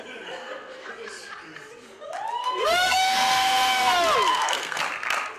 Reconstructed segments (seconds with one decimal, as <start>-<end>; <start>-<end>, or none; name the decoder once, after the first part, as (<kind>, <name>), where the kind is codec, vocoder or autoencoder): 0.4-0.9 (codec, SNAC); 2.4-3.9; 4.3-4.8